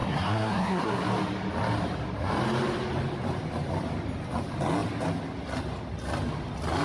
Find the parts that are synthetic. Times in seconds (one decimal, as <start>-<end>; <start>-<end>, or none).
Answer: 0.0-1.0